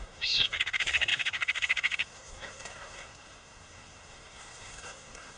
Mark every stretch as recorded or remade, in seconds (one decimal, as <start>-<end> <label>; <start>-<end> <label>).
0.0-5.4 remade